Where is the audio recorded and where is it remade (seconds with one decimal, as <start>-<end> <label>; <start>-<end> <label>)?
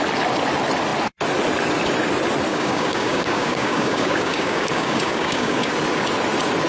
0.0-2.5 recorded; 2.5-5.7 remade; 5.7-6.7 recorded